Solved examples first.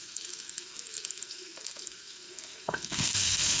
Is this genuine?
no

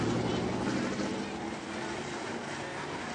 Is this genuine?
yes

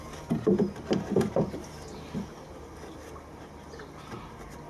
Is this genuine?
yes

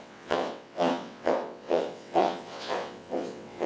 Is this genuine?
no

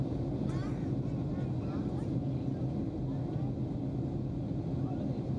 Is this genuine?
yes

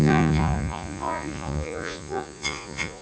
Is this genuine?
no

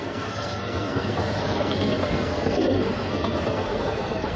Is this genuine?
no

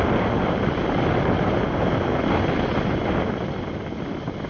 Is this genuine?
yes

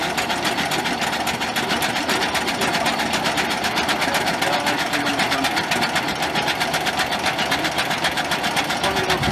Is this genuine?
yes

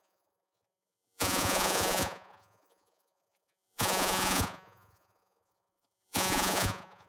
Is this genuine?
no